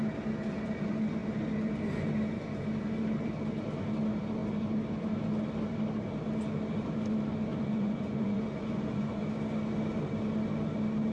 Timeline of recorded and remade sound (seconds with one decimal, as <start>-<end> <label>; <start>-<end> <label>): 0.0-7.5 recorded; 7.5-9.2 remade; 9.2-11.1 recorded